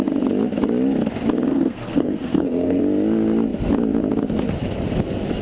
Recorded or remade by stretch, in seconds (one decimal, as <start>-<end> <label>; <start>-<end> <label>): 0.0-1.5 recorded; 1.5-2.8 remade; 2.8-5.4 recorded